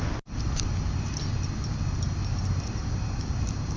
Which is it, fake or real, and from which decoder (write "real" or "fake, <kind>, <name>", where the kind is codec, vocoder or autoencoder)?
real